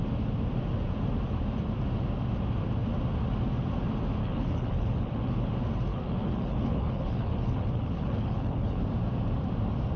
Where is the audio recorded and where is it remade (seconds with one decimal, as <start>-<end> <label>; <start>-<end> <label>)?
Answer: 0.0-4.2 recorded; 4.2-5.5 remade; 5.5-5.9 recorded; 5.9-8.8 remade; 8.8-10.0 recorded